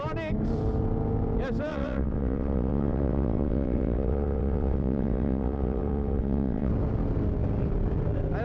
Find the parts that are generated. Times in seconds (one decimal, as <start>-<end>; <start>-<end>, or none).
1.7-6.7